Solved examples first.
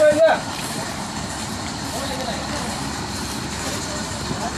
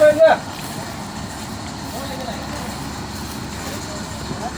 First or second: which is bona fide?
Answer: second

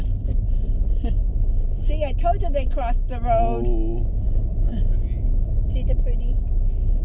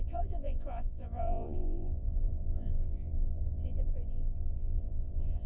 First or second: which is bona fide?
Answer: first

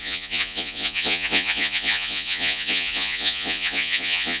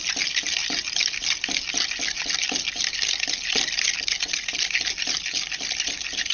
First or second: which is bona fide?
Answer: second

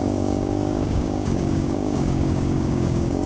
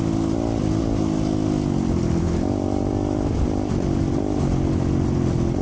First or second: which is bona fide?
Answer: second